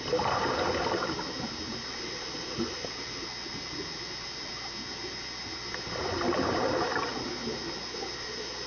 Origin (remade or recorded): recorded